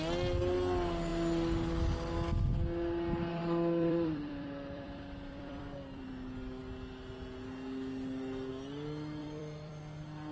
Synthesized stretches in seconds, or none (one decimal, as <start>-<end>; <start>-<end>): 3.3-6.1; 9.2-9.7